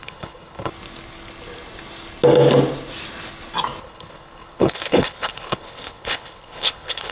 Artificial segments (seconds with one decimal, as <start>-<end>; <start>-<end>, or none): 0.0-0.7; 3.8-7.1